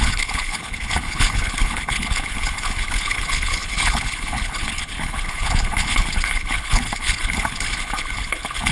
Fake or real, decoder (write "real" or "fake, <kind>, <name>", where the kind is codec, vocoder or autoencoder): fake, codec, HILCodec